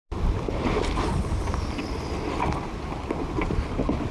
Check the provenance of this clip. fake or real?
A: real